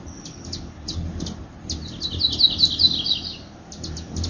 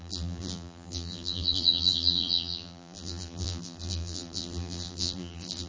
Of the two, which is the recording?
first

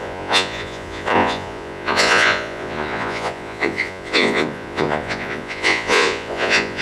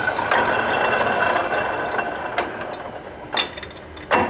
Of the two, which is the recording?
second